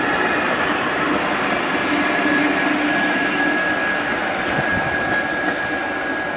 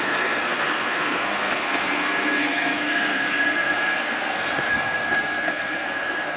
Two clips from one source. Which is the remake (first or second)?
second